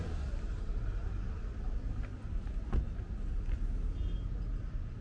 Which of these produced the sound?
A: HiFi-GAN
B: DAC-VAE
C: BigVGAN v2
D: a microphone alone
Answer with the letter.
D